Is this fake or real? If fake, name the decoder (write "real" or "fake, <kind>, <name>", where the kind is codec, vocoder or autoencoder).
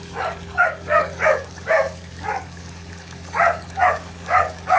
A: fake, codec, DAC